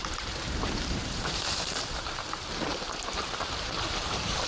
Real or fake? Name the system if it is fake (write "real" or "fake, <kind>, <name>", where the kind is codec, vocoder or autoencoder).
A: fake, vocoder, BigVGAN v2